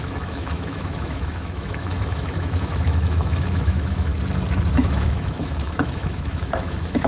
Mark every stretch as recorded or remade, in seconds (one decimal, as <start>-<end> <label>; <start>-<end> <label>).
0.0-4.1 remade; 4.1-4.7 recorded; 4.7-7.1 remade